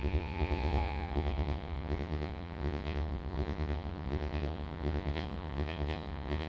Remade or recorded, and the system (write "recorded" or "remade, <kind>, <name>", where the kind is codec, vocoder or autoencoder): remade, vocoder, Vocos